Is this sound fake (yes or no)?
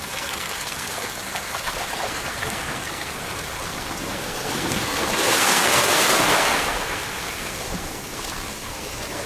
yes